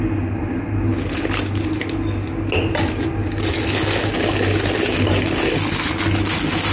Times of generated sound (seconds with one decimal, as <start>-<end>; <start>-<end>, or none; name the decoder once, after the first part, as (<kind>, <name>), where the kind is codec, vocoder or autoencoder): none